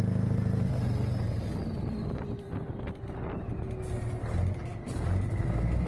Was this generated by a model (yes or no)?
no